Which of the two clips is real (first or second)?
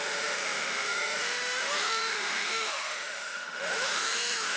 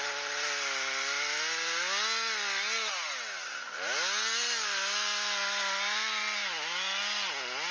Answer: second